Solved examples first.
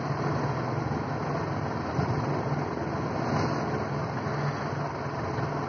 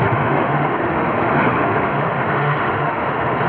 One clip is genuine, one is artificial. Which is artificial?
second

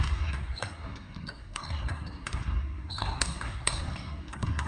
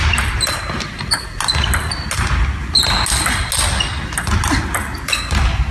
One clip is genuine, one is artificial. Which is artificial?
first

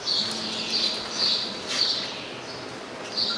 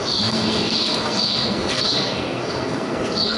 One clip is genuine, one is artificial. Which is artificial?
second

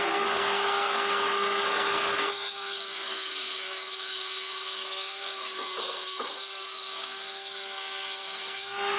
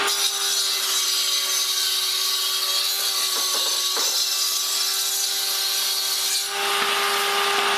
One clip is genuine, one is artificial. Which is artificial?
first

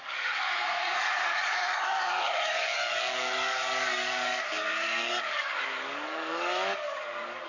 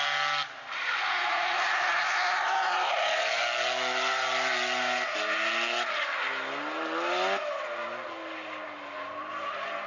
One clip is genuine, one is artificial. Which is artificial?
first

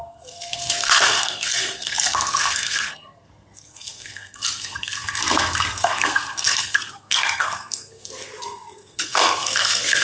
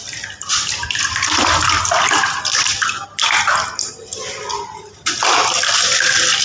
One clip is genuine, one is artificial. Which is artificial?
first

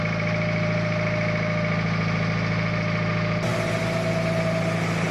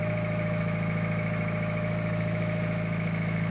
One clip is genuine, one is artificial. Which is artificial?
second